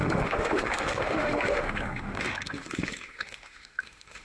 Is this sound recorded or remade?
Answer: remade